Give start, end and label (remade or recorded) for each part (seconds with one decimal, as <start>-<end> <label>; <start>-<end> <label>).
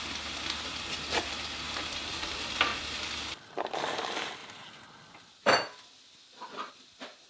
0.0-7.3 recorded